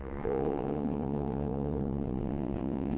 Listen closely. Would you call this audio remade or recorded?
remade